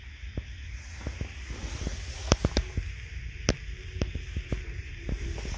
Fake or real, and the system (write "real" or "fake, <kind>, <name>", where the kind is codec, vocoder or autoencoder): real